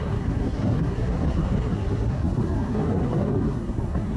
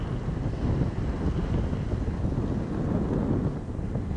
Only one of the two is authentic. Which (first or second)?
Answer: second